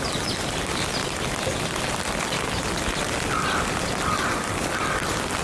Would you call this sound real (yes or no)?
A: yes